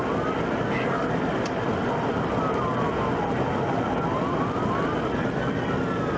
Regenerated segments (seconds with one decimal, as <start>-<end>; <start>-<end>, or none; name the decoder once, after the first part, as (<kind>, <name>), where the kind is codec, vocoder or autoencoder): none